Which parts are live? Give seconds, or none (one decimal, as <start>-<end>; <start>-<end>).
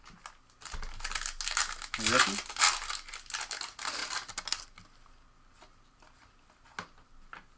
0.0-7.6